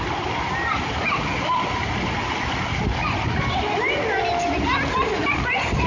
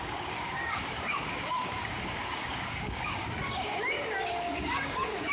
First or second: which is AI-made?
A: second